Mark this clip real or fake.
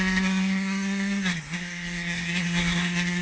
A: fake